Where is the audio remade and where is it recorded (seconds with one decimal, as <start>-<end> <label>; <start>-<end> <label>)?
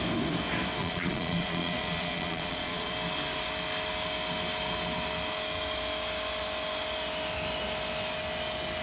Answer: 0.0-0.8 recorded; 0.8-2.9 remade; 2.9-8.8 recorded